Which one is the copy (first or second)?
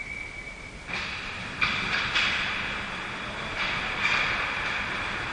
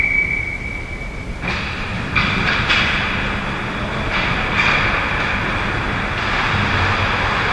first